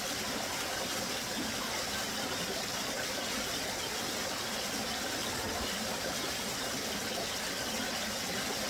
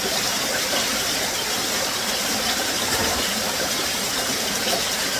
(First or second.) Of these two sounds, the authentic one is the first